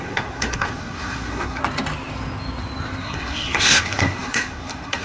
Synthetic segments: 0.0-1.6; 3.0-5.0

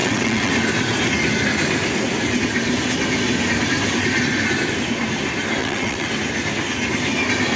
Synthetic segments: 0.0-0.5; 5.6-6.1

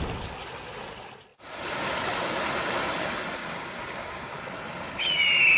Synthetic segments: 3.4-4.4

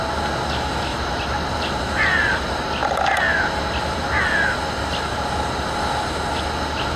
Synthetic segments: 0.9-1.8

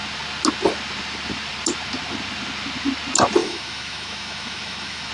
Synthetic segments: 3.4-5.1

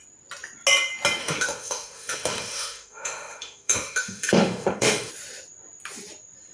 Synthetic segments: 1.2-5.1

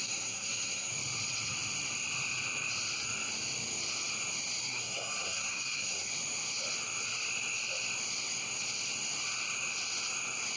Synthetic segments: 0.0-0.9; 4.6-6.1